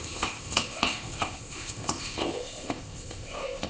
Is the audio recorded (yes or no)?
no